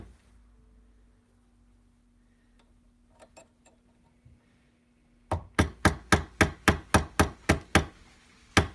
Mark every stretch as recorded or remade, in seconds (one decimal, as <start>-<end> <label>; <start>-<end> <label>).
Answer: 0.0-8.7 recorded